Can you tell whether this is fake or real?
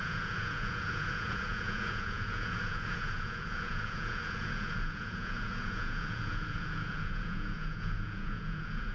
fake